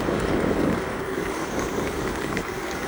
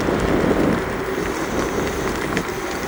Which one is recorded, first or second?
second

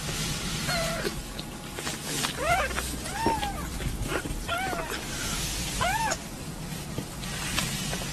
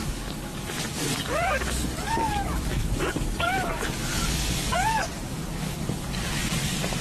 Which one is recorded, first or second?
first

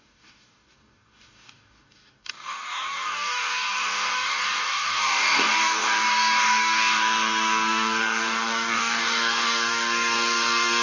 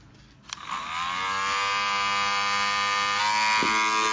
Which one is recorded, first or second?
second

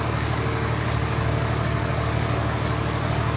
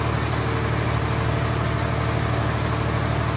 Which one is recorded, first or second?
second